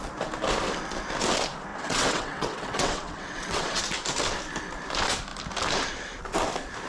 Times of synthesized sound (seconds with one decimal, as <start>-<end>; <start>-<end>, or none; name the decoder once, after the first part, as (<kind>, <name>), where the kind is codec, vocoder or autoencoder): 1.7-3.8 (vocoder, WaveNeXt)